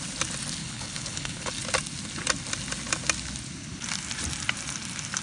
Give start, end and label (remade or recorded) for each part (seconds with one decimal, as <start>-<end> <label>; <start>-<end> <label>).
0.0-0.6 recorded; 0.6-1.5 remade; 1.5-5.2 recorded